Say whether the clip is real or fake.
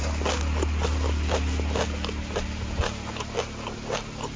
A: real